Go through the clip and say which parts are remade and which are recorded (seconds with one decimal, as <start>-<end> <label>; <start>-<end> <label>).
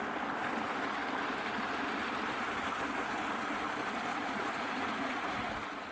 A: 0.0-4.1 recorded; 4.1-5.5 remade; 5.5-5.9 recorded